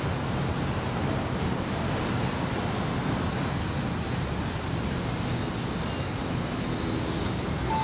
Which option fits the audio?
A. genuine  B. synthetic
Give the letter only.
A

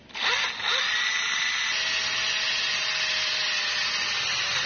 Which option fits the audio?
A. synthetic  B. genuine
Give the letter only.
B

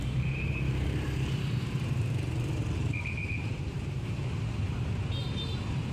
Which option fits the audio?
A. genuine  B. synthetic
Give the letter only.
B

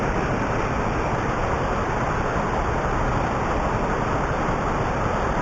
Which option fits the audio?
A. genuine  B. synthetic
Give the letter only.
A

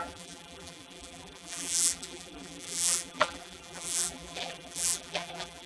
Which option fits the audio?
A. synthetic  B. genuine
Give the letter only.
A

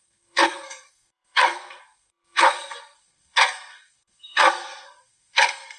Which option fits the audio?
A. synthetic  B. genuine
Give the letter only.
A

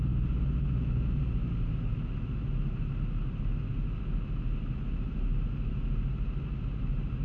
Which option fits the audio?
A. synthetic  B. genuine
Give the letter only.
B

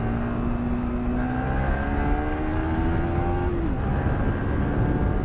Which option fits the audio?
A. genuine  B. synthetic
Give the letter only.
A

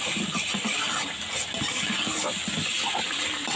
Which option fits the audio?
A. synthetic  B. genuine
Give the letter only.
B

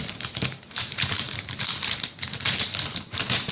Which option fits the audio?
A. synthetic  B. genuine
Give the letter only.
A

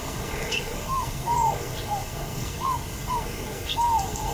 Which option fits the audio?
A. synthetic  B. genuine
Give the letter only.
A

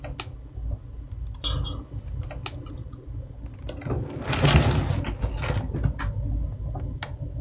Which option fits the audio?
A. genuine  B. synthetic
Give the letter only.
A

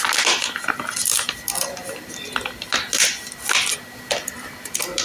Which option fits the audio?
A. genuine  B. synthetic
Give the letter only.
A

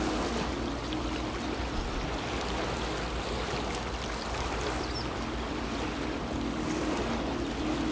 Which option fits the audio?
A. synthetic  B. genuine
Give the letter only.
B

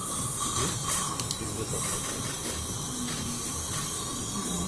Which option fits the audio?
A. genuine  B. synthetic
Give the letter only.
A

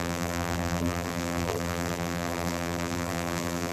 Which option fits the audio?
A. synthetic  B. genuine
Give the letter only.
A